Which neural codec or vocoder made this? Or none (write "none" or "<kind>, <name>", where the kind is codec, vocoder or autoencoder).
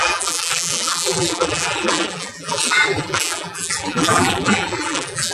vocoder, BigVGAN v2